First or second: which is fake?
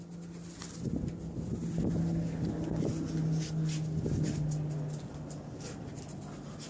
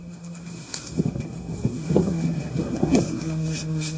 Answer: second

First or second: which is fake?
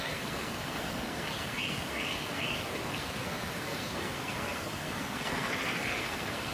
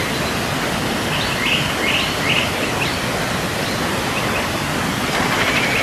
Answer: first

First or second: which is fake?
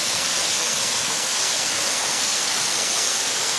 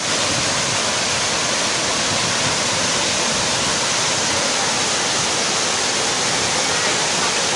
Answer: first